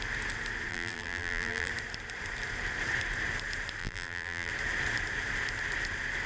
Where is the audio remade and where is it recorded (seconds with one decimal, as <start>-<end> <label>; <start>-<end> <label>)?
0.0-0.7 recorded; 0.7-1.7 remade; 1.7-3.8 recorded; 3.8-4.5 remade; 4.5-6.3 recorded